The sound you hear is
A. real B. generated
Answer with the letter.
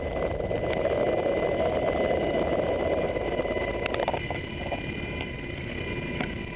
A